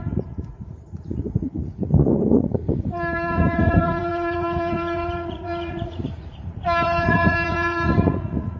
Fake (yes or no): yes